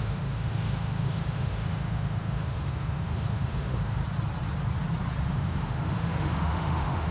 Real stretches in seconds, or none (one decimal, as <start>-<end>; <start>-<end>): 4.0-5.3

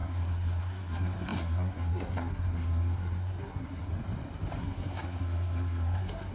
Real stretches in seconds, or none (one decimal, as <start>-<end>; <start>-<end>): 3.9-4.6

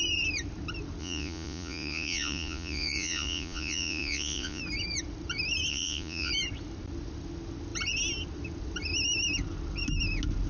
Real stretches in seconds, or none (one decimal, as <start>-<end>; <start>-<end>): 0.0-1.0; 4.6-5.7; 6.3-10.5